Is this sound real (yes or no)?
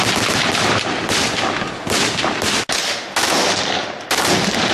yes